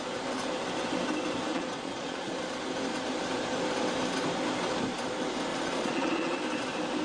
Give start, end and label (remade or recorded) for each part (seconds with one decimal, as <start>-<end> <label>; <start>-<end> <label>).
0.0-1.5 recorded; 1.5-2.3 remade; 2.3-5.5 recorded; 5.5-6.4 remade; 6.4-7.0 recorded